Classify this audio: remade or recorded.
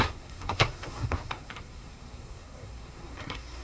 remade